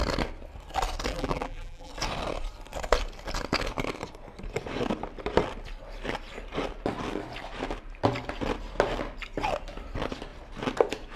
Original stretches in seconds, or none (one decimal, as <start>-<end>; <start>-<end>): 0.0-1.1; 1.9-11.2

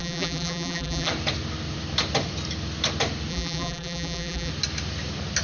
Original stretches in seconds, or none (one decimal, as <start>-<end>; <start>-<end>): 1.1-3.3; 4.5-5.4

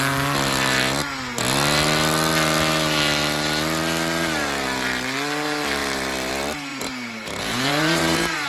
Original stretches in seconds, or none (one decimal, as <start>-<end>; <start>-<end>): 0.0-6.7

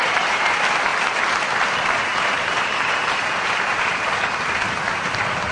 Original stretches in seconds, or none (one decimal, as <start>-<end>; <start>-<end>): 0.9-1.4

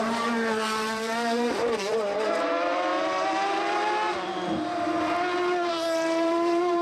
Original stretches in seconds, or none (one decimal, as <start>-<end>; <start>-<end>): 2.9-5.7

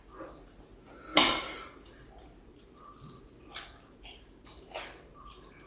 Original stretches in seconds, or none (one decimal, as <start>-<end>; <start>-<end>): 0.0-1.1; 2.0-2.5

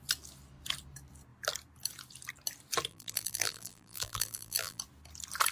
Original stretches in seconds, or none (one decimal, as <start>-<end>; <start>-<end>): 0.0-2.9; 4.8-5.5